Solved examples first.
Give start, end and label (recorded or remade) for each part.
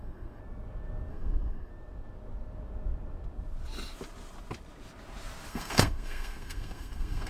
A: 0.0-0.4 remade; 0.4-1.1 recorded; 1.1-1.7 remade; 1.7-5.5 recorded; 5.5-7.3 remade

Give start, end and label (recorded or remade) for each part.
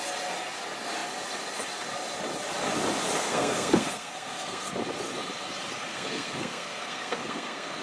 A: 0.0-3.2 recorded; 3.2-4.7 remade; 4.7-5.9 recorded; 5.9-7.8 remade